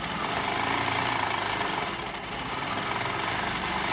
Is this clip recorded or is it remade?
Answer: recorded